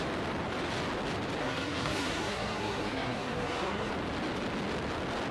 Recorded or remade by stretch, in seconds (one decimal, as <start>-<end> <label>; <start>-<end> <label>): 0.0-1.4 recorded; 1.4-3.9 remade; 3.9-5.3 recorded